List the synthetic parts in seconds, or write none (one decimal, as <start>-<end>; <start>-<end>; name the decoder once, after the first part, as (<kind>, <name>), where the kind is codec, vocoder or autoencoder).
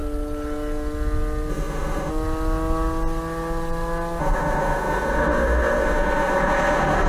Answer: 1.5-2.1 (autoencoder, DAC-VAE); 4.2-7.1